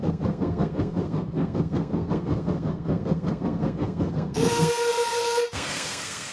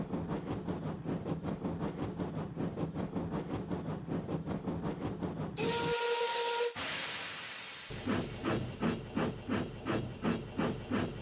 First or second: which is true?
second